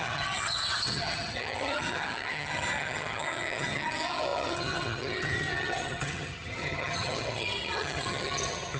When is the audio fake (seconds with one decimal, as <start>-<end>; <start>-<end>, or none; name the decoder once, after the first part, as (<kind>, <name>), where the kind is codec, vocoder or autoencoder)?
0.0-8.8 (vocoder, HiFi-GAN)